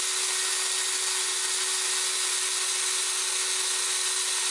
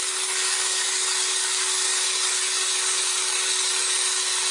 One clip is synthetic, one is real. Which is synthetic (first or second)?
second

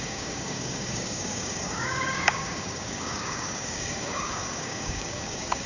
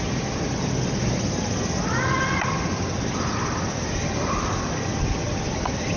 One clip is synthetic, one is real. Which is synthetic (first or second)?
first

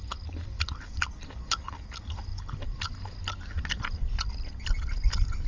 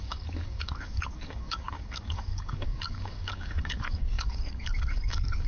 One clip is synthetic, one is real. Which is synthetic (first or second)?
second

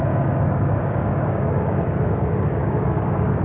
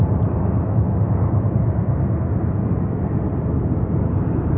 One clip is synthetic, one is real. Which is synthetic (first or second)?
first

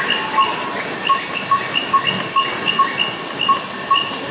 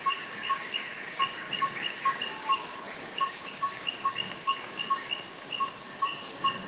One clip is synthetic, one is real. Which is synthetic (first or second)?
second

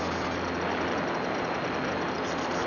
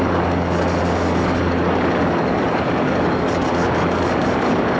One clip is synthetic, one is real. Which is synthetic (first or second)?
second